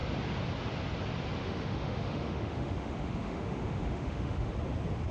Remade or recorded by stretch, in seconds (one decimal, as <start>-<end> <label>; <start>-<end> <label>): 0.0-1.4 recorded; 1.4-4.5 remade; 4.5-5.1 recorded